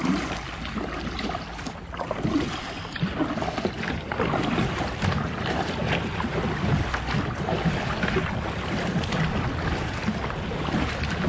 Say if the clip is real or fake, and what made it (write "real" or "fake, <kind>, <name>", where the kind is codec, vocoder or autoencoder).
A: real